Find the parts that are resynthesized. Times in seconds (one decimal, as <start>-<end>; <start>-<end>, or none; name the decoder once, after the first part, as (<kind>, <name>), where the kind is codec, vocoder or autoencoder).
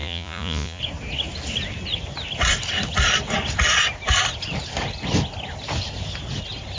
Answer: 0.0-0.8 (vocoder, Vocos)